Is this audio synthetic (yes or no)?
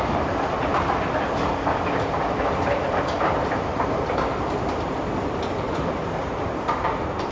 yes